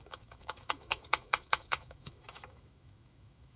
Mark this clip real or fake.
fake